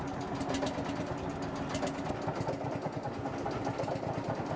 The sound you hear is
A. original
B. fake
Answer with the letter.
A